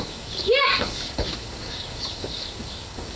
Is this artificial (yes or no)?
yes